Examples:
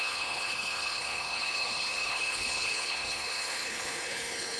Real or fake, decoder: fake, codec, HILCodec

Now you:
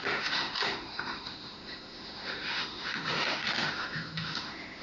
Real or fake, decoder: fake, autoencoder, DAC-VAE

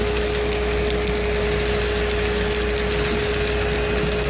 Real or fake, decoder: real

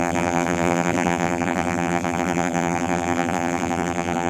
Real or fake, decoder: fake, vocoder, BigVGAN v2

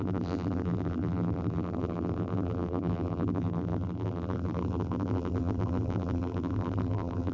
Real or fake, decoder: fake, vocoder, BigVGAN v2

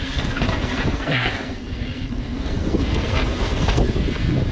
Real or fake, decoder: fake, codec, SNAC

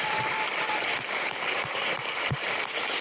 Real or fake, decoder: fake, vocoder, BigVGAN v2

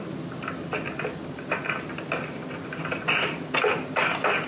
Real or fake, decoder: real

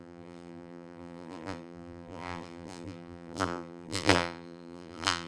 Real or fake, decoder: fake, vocoder, BigVGAN v2